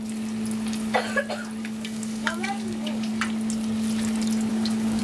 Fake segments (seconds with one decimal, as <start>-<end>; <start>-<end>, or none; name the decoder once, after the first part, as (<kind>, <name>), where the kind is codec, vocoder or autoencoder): 1.6-3.1 (codec, DAC); 4.5-5.0

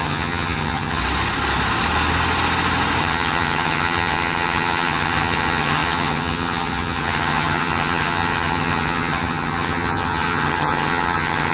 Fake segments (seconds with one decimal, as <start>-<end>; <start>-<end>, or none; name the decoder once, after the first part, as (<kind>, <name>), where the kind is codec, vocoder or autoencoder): 0.0-1.0 (vocoder, HiFi-GAN); 3.0-11.5

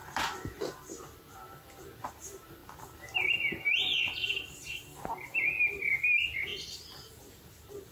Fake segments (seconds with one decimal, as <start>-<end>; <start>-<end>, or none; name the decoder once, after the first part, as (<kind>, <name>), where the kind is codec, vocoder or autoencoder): 0.0-2.1 (vocoder, BigVGAN v2); 6.5-7.9

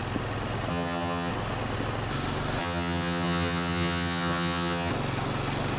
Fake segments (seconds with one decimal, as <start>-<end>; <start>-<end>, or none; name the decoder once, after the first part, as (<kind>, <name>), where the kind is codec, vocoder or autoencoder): 0.7-1.3 (vocoder, HiFi-GAN); 2.6-4.9

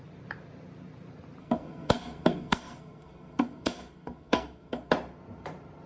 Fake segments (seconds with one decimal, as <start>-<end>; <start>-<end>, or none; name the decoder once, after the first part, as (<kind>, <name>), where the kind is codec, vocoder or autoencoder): 1.4-4.9 (codec, SNAC)

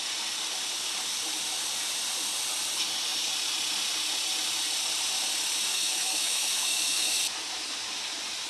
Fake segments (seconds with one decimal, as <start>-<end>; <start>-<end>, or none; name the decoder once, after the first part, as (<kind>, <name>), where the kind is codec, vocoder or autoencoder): 5.7-7.2 (autoencoder, DAC-VAE)

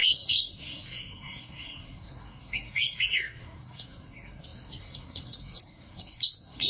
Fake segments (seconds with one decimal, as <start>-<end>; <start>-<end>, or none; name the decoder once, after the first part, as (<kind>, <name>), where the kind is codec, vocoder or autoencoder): 0.0-6.7 (codec, SNAC)